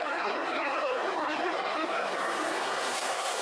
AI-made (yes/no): yes